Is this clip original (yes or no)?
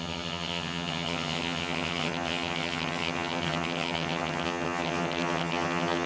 no